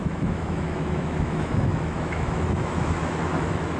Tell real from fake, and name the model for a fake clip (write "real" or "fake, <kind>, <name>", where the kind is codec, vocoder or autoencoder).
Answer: fake, autoencoder, DAC-VAE